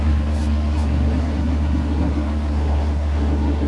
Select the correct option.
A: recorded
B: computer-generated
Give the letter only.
B